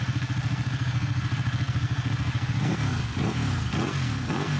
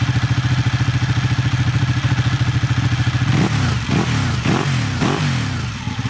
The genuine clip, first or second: second